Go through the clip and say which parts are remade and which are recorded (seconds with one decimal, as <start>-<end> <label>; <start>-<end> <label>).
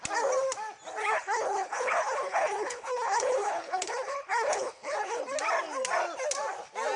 0.0-1.0 recorded; 1.0-5.2 remade; 5.2-7.0 recorded